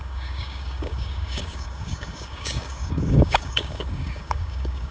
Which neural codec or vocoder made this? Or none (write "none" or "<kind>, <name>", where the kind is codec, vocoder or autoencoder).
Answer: codec, DAC